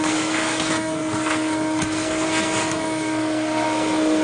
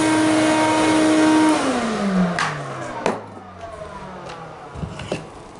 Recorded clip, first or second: second